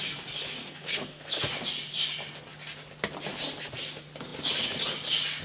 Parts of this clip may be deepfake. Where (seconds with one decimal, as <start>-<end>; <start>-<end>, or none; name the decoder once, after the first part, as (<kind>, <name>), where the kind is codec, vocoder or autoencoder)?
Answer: 0.6-1.4 (codec, SNAC)